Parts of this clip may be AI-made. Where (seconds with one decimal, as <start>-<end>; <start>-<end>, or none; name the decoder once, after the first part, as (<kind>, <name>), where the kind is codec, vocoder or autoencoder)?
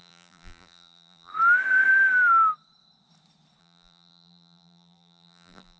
0.0-1.3 (vocoder, BigVGAN v2); 3.6-5.8